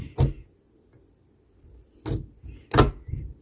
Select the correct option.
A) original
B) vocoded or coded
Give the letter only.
A